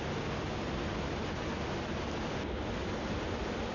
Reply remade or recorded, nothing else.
recorded